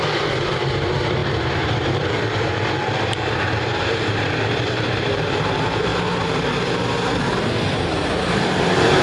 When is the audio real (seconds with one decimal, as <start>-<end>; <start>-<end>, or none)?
5.9-6.8